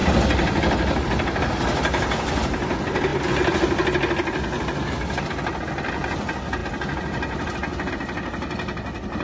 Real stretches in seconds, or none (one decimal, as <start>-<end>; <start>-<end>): 0.0-9.2